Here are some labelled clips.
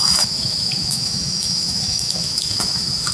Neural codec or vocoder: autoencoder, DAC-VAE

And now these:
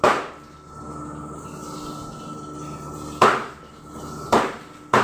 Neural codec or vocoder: none